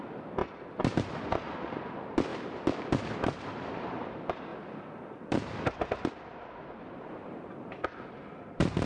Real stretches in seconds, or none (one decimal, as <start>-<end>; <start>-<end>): 0.0-2.3; 4.0-4.5; 8.1-8.9